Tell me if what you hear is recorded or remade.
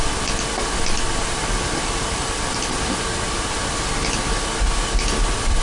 recorded